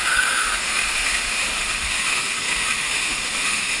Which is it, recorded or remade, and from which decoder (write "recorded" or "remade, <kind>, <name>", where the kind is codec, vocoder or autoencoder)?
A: remade, autoencoder, DAC-VAE